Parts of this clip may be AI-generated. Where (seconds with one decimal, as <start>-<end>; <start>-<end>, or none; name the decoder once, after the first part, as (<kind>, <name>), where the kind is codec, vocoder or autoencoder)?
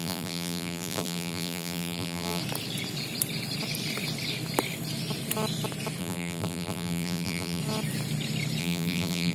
0.0-2.4 (vocoder, BigVGAN v2); 6.0-7.6; 8.6-9.3